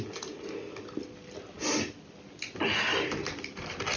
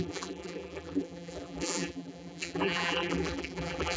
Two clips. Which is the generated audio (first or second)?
second